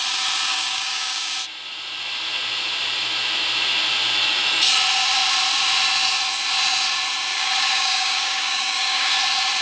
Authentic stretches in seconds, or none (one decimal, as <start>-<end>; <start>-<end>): 0.0-0.5; 1.3-7.3; 9.1-9.6